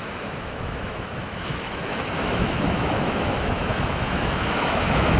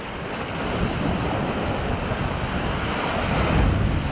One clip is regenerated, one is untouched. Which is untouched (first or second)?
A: second